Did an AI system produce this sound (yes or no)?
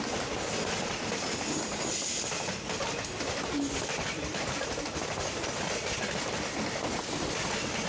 yes